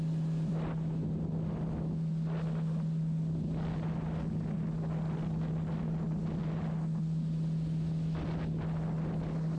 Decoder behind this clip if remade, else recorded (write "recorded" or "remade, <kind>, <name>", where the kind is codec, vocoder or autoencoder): recorded